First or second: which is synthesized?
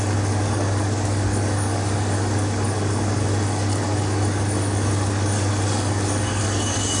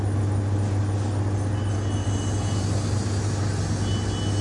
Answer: first